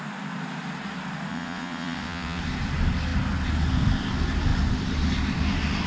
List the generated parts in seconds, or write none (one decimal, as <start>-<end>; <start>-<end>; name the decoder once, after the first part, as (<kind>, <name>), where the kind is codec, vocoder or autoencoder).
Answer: 1.3-2.4 (vocoder, WaveNeXt)

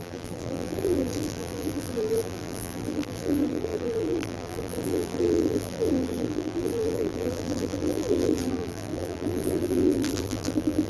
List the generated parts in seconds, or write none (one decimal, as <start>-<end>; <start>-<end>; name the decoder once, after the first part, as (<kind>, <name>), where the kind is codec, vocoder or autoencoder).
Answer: 0.0-10.9 (vocoder, BigVGAN v2)

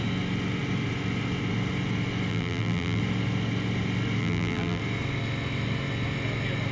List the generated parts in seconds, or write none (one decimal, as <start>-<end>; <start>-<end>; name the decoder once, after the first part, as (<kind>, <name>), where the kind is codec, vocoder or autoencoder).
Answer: 2.3-3.0 (vocoder, BigVGAN v2); 4.2-4.8

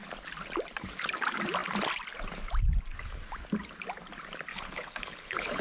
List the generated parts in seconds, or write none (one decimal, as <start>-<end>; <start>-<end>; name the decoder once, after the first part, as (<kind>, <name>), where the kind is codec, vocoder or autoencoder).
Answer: 4.5-5.6 (codec, HILCodec)

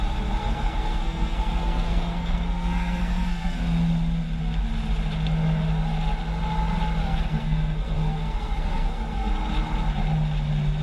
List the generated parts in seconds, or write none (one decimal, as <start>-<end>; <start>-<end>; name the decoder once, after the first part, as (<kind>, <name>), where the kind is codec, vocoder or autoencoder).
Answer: 0.4-3.6 (codec, SNAC); 7.0-9.3

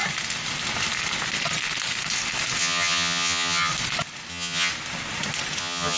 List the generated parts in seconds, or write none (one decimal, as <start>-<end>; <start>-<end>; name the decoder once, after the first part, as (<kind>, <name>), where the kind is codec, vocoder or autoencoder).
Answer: 2.6-3.7 (vocoder, HiFi-GAN); 4.3-4.7; 5.6-6.0

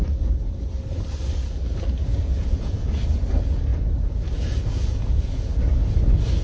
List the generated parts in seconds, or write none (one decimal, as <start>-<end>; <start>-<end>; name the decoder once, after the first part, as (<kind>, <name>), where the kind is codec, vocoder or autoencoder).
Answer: 2.1-2.9 (vocoder, Vocos); 3.7-5.6

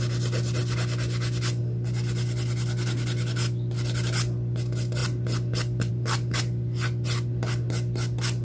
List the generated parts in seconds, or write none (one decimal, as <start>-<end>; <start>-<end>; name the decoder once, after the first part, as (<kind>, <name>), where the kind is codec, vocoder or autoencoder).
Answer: none